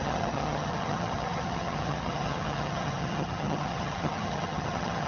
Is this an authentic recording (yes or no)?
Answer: no